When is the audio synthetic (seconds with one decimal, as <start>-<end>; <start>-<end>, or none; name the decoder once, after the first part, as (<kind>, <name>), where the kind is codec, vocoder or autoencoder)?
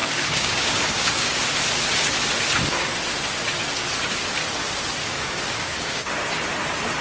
0.0-1.4 (codec, DAC); 5.0-6.1